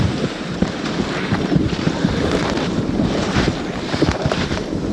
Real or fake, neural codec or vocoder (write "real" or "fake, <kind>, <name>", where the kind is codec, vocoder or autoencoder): fake, vocoder, BigVGAN v2